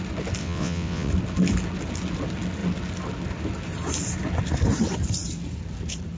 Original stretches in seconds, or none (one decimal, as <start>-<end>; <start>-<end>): 0.0-0.4; 1.1-6.2